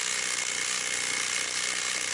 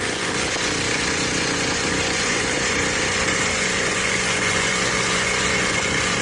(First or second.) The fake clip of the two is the second